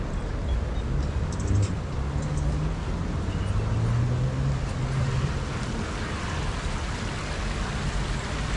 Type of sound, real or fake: real